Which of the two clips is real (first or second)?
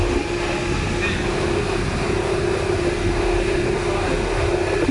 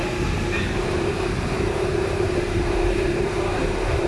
first